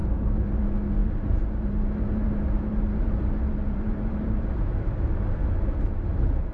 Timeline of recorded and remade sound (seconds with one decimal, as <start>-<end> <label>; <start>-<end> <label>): 0.0-0.6 remade; 0.6-1.0 recorded; 1.0-4.9 remade; 4.9-6.5 recorded